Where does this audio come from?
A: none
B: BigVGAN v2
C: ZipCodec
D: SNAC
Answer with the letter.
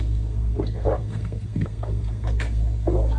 D